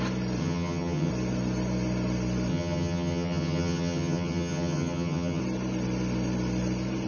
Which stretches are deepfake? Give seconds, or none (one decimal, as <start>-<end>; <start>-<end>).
0.4-1.1; 2.5-5.4